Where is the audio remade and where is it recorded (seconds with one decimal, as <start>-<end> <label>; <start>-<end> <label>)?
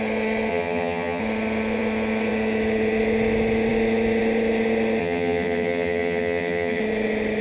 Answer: 0.0-0.5 recorded; 0.5-1.2 remade; 1.2-5.0 recorded; 5.0-6.8 remade; 6.8-7.4 recorded